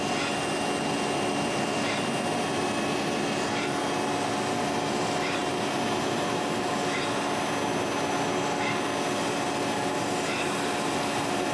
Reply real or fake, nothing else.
real